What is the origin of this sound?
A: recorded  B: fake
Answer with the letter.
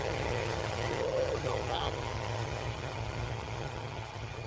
B